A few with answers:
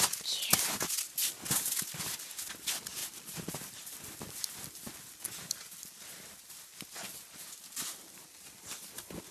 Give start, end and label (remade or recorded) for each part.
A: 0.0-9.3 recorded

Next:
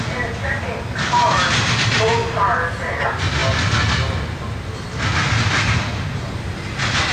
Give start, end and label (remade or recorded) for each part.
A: 0.0-7.1 recorded

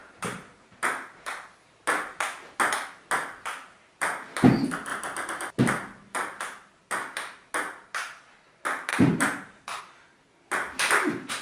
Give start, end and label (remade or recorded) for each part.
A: 0.0-0.7 remade; 0.7-8.9 recorded; 8.9-9.8 remade; 9.8-11.4 recorded

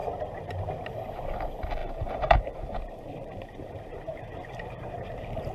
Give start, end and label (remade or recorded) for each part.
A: 0.0-1.8 recorded; 1.8-5.1 remade; 5.1-5.5 recorded

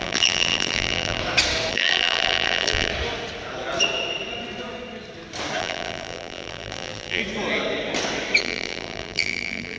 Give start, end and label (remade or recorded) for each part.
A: 0.0-1.2 remade; 1.2-1.7 recorded; 1.7-2.9 remade; 2.9-5.6 recorded; 5.6-7.2 remade; 7.2-8.4 recorded; 8.4-9.8 remade

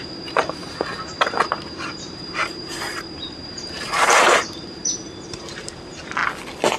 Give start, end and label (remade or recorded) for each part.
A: 0.0-6.2 remade; 6.2-6.8 recorded

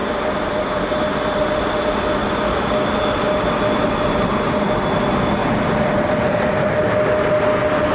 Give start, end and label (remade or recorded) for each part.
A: 0.0-5.4 recorded; 5.4-6.7 remade; 6.7-7.9 recorded